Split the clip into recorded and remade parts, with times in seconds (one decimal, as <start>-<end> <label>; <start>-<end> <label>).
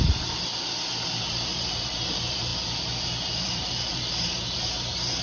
0.0-0.5 remade; 0.5-1.2 recorded; 1.2-5.2 remade